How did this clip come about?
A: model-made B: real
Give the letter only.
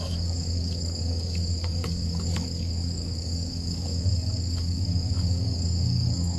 A